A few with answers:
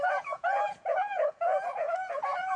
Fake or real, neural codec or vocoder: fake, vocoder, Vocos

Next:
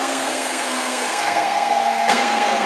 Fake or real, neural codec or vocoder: fake, codec, SNAC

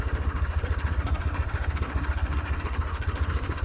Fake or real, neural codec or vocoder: fake, codec, SNAC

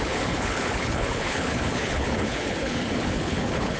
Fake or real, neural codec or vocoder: fake, codec, HILCodec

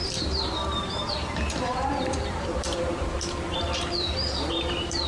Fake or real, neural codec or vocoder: fake, vocoder, BigVGAN v2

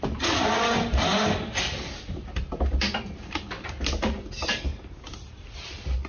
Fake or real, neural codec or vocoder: real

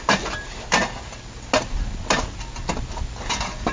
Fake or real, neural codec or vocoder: real